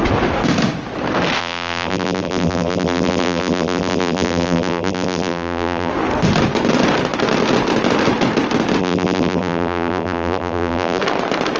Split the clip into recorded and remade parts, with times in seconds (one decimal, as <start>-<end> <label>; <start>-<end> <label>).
0.0-1.4 recorded; 1.4-5.9 remade; 5.9-8.8 recorded; 8.8-11.0 remade; 11.0-11.6 recorded